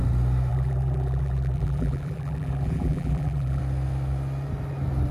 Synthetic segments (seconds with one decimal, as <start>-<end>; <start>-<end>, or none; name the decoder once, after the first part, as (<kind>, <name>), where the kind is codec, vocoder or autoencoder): 0.5-3.6 (vocoder, BigVGAN v2)